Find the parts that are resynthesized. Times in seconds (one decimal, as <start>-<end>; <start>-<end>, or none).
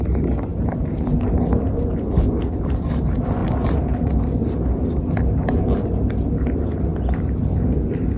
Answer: none